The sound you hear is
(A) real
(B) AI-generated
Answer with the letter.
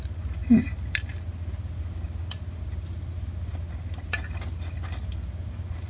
A